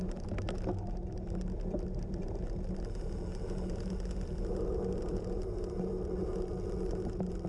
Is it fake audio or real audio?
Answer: real